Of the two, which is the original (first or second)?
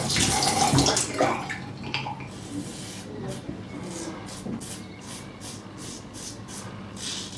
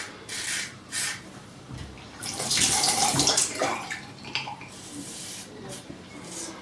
first